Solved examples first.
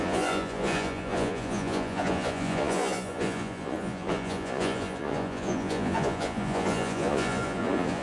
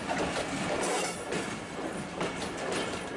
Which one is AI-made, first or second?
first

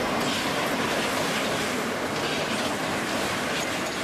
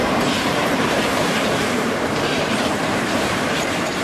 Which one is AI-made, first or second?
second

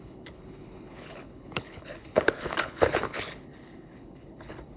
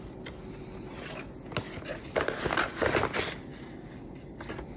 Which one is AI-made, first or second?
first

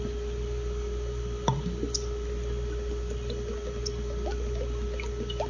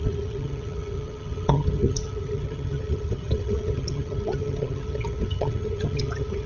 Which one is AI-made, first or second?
second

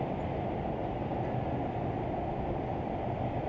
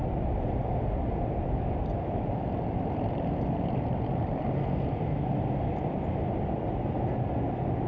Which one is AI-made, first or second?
second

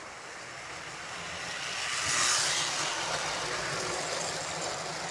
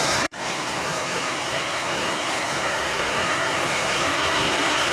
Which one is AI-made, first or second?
second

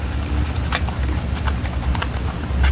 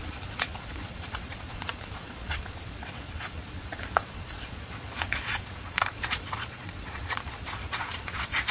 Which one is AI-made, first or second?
second